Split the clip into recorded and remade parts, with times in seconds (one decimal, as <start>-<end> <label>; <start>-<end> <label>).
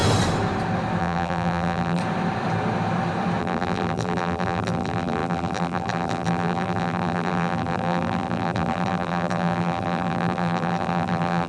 0.0-1.0 recorded; 1.0-2.0 remade; 2.0-3.4 recorded; 3.4-11.5 remade